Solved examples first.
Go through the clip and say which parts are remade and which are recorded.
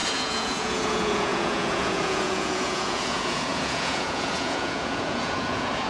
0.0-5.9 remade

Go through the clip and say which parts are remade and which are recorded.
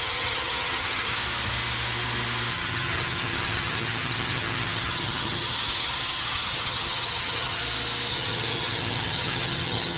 0.0-1.2 remade; 1.2-2.5 recorded; 2.5-7.6 remade; 7.6-8.1 recorded; 8.1-10.0 remade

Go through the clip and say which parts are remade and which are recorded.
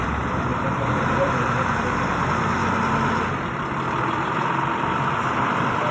0.0-2.6 remade; 2.6-5.9 recorded